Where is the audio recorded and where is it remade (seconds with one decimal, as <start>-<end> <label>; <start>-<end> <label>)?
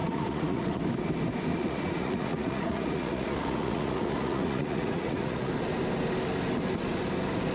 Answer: 0.0-0.8 remade; 0.8-1.5 recorded; 1.5-5.5 remade; 5.5-7.5 recorded